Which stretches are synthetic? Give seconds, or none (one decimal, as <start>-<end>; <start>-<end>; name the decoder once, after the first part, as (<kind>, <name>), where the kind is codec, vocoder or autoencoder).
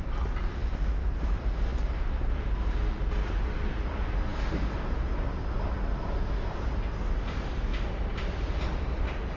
none